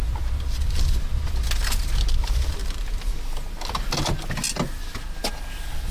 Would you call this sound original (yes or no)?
yes